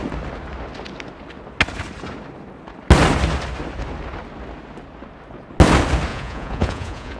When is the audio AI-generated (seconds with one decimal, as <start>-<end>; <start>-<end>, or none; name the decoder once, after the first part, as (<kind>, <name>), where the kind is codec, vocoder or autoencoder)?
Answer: 6.1-7.2 (vocoder, Vocos)